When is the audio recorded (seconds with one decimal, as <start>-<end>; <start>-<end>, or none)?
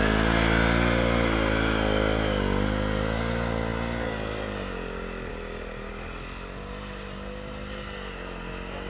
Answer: 0.0-8.9